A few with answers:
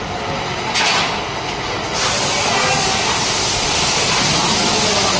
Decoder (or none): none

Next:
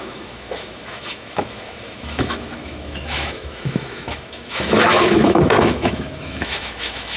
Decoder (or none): autoencoder, DAC-VAE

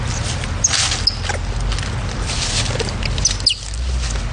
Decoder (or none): none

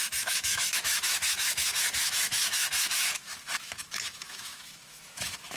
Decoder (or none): autoencoder, DAC-VAE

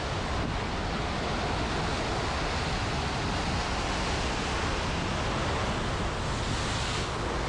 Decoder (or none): none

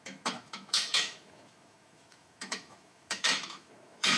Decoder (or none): autoencoder, DAC-VAE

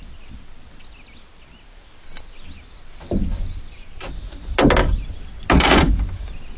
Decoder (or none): none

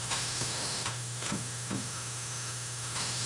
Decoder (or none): autoencoder, DAC-VAE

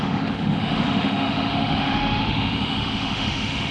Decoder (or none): autoencoder, DAC-VAE